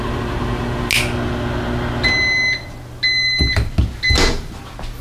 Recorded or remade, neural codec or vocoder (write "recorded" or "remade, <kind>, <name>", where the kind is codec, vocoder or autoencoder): recorded